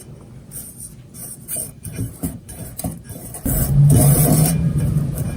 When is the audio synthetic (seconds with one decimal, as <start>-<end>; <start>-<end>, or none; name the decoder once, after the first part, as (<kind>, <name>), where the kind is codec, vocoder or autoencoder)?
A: 1.2-3.1 (vocoder, BigVGAN v2); 4.0-5.4